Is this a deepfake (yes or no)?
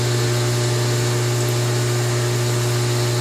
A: no